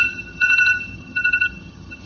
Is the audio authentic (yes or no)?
no